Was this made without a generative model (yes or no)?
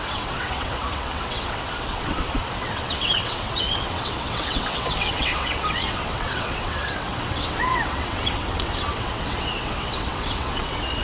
no